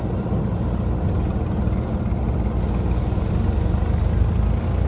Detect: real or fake real